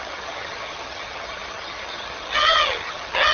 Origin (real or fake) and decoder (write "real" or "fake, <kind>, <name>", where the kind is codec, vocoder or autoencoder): fake, vocoder, HiFi-GAN